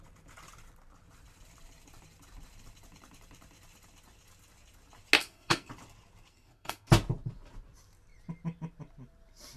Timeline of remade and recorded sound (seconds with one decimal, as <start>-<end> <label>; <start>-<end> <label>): 0.0-5.2 recorded; 5.2-5.7 remade; 5.7-6.3 recorded; 6.3-6.9 remade; 6.9-9.6 recorded